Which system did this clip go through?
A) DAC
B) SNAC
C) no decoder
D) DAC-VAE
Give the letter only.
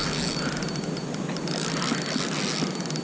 C